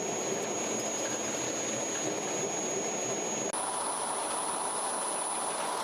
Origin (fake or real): real